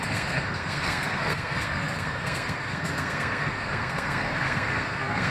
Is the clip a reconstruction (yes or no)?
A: yes